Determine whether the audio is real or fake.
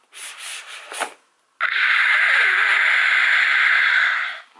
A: real